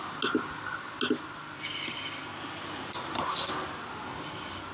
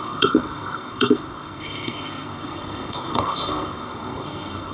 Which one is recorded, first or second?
first